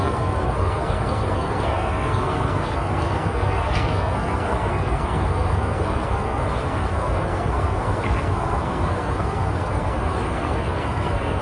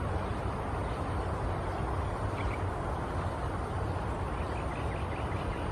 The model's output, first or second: first